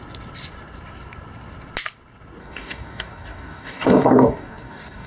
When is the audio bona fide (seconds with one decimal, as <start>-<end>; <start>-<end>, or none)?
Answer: 0.0-2.4